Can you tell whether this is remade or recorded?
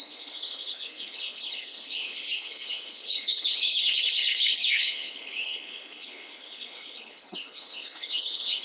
remade